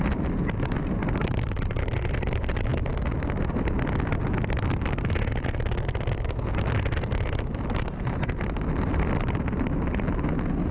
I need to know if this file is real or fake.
real